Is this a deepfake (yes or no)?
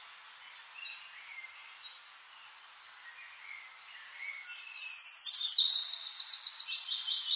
no